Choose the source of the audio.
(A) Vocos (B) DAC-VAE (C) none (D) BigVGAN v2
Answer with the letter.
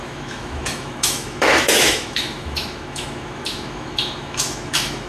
B